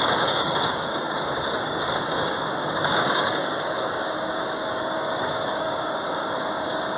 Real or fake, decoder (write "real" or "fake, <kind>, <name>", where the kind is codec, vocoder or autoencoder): fake, codec, DAC